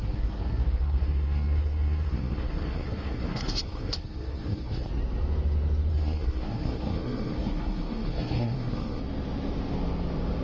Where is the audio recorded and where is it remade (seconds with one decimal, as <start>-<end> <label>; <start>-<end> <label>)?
0.0-4.9 remade; 4.9-5.9 recorded; 5.9-9.0 remade; 9.0-10.4 recorded